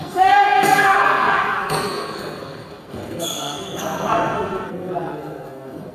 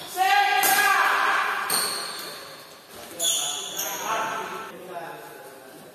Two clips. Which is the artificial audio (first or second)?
first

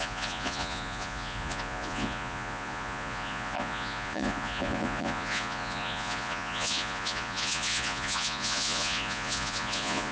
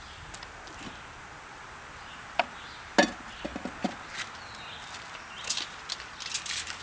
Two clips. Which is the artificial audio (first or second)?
first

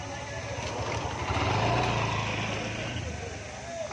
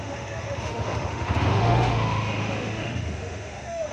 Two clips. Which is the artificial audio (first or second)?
second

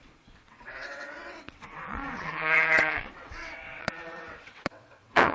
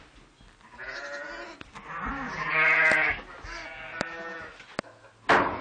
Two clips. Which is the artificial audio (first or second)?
first